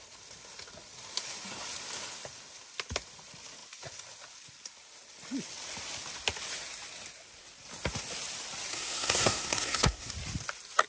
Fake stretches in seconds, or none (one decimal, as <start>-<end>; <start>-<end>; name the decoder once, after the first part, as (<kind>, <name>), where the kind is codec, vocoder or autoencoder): 8.7-10.1 (codec, SNAC)